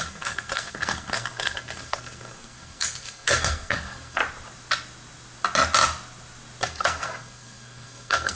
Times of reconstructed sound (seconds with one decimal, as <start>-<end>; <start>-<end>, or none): 0.0-4.2; 6.6-8.4